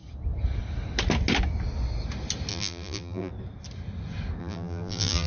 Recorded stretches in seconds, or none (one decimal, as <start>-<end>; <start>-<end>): 0.0-2.5; 3.3-4.4